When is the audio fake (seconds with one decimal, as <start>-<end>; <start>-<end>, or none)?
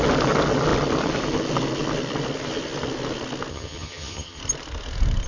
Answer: 3.5-4.4